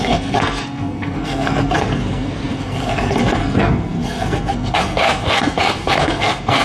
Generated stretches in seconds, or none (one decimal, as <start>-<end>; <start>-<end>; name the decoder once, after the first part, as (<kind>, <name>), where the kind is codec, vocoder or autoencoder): 0.0-6.6 (codec, SNAC)